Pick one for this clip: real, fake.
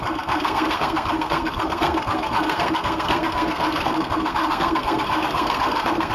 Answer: fake